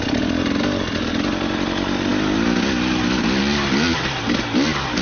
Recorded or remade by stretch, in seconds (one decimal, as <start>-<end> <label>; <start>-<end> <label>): 0.0-5.0 recorded